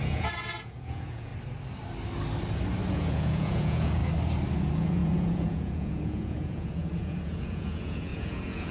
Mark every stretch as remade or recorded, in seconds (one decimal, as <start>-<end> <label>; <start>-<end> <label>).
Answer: 0.0-1.3 remade; 1.3-2.9 recorded; 2.9-4.0 remade; 4.0-4.6 recorded; 4.6-8.7 remade